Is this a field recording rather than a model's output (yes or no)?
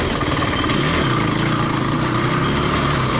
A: yes